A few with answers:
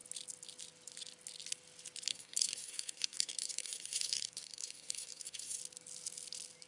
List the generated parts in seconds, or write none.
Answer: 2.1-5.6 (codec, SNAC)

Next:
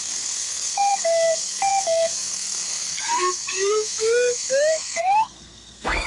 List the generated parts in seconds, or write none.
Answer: 0.0-6.1 (codec, SNAC)

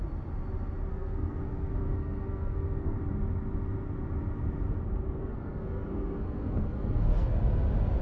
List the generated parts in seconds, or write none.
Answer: 0.9-3.0 (codec, SNAC); 5.2-7.4

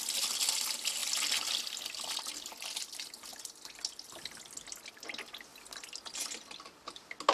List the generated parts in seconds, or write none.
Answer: none

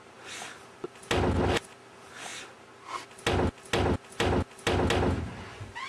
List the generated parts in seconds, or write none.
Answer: none

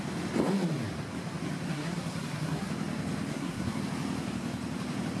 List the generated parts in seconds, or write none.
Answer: 1.7-2.7 (codec, SNAC); 3.3-3.8

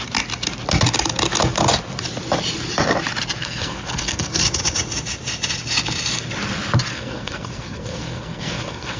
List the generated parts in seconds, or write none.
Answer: 3.4-4.3 (codec, SNAC); 6.9-9.0